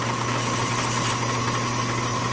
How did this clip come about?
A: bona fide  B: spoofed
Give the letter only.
A